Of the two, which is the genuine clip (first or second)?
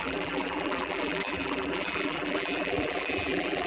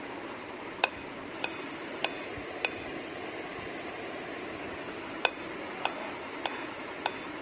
second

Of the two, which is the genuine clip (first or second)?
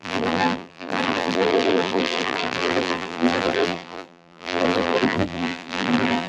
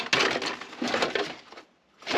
second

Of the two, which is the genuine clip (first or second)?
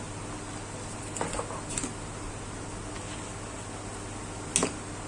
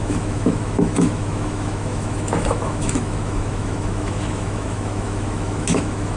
first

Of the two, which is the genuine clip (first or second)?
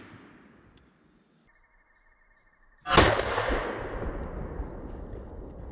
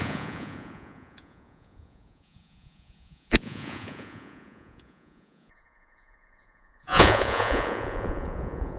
first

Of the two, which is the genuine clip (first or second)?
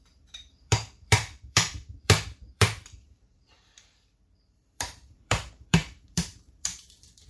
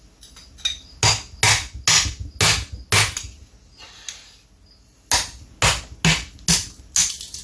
second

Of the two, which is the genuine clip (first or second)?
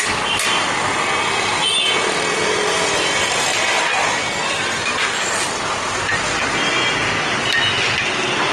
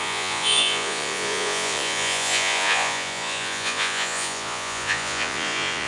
first